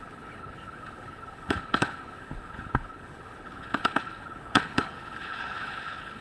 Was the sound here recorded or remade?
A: remade